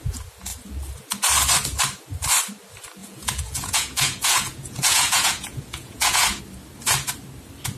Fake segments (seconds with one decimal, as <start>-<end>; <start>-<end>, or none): 3.0-6.4

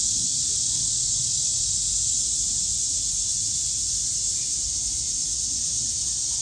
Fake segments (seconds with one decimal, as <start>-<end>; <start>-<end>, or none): none

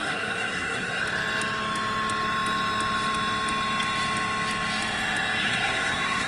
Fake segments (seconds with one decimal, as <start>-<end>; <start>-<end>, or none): 0.0-1.0; 5.4-6.3

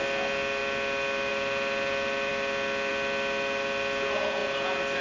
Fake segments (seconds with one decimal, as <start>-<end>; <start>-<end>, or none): none

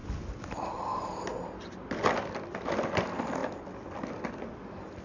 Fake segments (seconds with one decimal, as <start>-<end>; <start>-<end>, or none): none

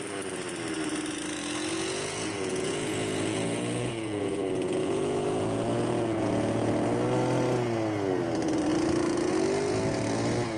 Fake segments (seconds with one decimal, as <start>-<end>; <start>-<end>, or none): 1.7-6.7

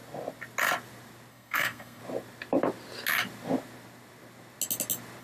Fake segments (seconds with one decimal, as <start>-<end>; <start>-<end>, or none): 1.3-2.0

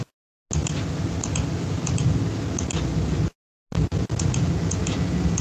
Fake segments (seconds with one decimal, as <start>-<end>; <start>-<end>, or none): none